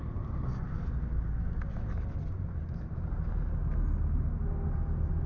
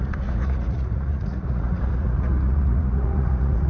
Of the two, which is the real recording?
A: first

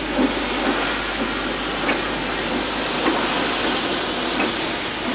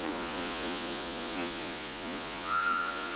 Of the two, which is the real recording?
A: first